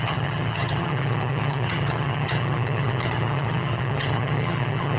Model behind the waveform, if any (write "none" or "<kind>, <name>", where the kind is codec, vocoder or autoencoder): vocoder, HiFi-GAN